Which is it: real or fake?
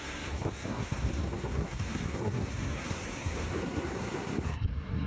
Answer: fake